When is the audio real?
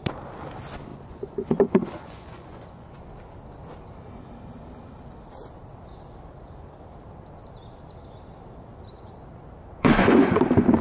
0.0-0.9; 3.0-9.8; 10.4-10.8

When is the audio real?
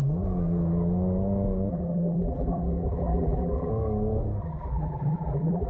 0.0-1.7; 3.7-4.4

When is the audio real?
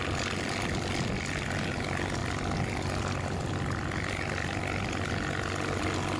0.0-6.2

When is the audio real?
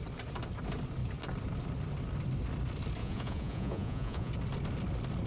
0.0-3.0; 4.3-5.3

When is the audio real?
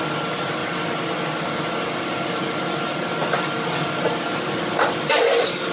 0.0-5.7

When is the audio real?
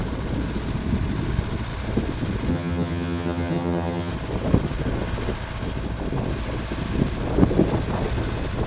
0.0-2.5; 4.1-8.7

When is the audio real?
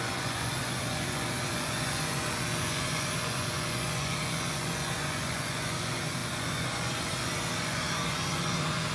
none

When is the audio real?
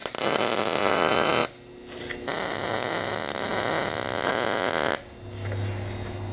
0.9-6.3